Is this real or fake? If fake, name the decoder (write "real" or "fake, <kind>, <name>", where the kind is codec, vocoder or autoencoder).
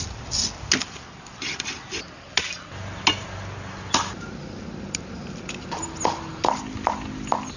real